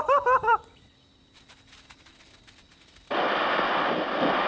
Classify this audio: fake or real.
real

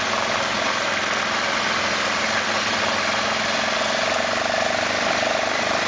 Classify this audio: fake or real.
real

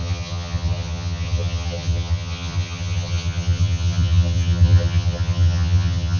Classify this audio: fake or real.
fake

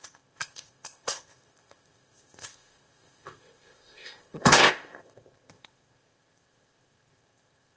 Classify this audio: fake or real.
fake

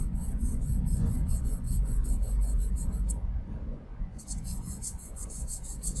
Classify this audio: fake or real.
fake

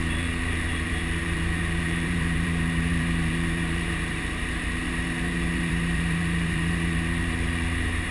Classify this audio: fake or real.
fake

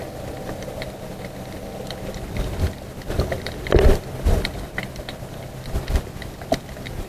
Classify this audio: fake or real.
real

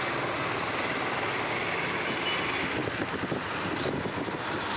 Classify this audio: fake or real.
real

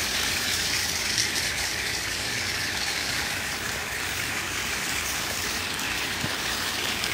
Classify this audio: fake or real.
fake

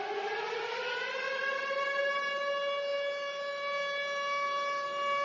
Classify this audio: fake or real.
real